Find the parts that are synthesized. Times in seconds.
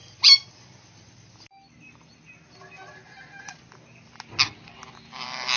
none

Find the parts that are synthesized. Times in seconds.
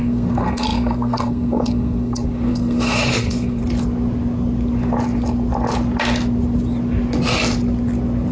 0.0-3.6 (codec, SNAC)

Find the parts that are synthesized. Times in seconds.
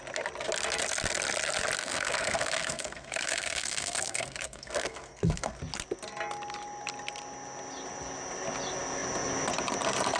1.8-5.6 (codec, SNAC)